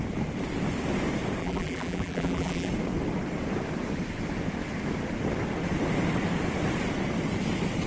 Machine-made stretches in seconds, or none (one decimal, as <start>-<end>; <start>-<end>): 1.4-2.7